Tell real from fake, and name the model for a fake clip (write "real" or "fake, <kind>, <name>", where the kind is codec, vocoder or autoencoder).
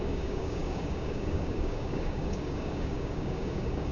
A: fake, codec, DAC